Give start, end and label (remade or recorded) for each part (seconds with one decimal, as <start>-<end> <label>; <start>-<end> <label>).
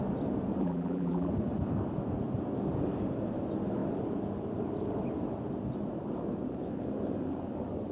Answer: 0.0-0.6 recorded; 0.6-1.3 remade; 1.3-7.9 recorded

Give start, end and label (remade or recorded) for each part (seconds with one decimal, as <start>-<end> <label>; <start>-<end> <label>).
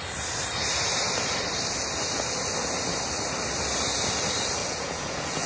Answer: 0.0-4.6 recorded; 4.6-5.5 remade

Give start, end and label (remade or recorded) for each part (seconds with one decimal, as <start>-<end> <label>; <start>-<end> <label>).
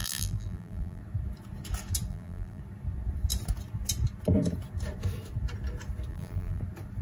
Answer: 0.0-1.0 remade; 1.0-2.1 recorded; 2.1-2.6 remade; 2.6-6.1 recorded; 6.1-6.6 remade; 6.6-7.0 recorded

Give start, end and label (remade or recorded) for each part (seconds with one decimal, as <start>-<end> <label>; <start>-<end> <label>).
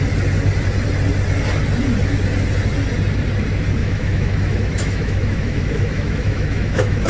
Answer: 0.0-3.8 recorded; 3.8-7.1 remade